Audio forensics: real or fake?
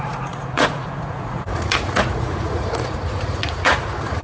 fake